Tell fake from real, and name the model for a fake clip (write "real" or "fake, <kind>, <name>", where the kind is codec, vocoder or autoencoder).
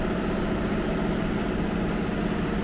real